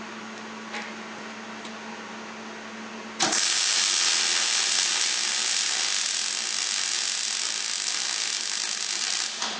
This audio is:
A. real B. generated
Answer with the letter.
A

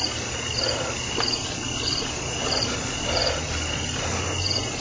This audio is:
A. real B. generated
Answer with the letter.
A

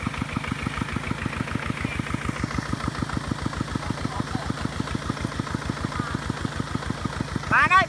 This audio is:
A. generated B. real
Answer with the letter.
B